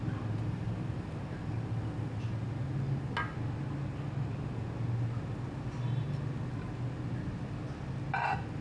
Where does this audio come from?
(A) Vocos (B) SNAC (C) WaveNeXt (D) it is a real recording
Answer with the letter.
D